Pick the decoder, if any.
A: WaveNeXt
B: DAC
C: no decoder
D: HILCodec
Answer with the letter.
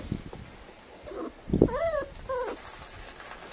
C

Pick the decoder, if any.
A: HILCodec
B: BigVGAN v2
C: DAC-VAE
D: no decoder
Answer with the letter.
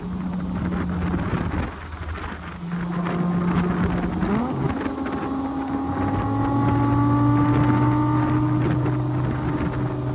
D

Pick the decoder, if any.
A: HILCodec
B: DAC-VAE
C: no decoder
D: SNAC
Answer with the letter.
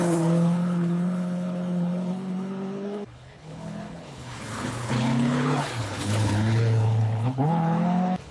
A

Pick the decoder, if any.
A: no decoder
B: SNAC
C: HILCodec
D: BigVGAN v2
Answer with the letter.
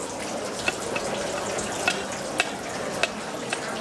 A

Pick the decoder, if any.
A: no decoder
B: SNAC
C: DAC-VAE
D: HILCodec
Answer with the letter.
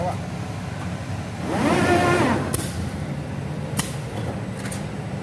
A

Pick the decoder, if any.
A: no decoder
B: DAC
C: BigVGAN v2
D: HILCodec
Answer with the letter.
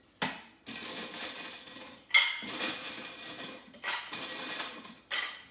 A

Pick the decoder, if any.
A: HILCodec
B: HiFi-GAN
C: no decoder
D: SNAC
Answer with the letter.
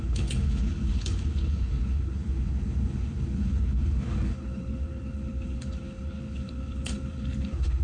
A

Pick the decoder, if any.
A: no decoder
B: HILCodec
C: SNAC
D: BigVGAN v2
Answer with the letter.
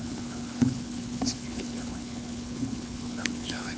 B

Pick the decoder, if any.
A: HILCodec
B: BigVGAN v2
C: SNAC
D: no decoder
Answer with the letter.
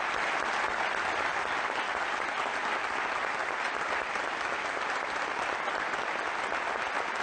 D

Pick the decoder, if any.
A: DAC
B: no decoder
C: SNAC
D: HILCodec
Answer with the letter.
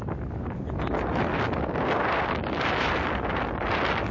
B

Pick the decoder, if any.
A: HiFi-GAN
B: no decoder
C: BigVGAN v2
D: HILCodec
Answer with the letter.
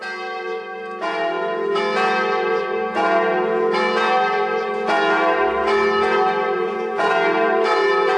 B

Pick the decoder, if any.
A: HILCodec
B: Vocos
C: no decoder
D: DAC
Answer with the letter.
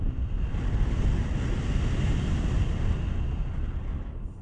C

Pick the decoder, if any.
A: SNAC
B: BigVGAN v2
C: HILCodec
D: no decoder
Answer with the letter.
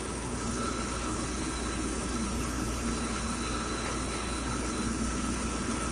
C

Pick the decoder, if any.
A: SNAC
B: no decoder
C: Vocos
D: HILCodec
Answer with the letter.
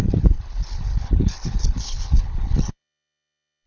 D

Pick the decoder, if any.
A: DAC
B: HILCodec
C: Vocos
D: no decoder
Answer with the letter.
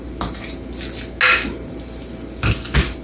D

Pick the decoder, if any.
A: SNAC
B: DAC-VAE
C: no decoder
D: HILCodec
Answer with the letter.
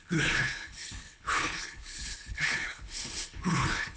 D